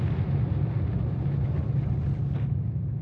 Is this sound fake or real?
real